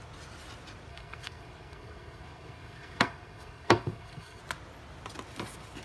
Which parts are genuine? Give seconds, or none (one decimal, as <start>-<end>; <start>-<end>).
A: 0.0-0.9; 4.4-5.8